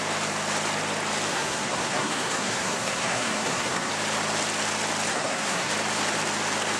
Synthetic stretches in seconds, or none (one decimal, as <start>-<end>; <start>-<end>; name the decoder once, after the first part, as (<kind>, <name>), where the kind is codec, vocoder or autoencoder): 1.3-3.9 (codec, SNAC); 5.1-5.7